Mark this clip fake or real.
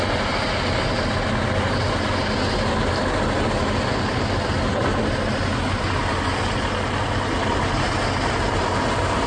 real